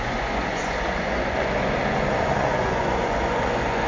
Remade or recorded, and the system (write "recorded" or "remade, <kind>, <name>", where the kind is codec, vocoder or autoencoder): remade, vocoder, Vocos